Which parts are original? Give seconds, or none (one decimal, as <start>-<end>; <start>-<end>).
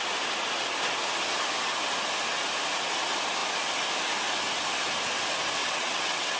0.0-5.6